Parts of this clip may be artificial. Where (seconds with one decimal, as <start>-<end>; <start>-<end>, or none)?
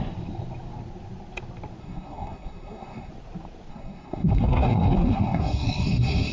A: 1.8-3.1; 3.7-6.3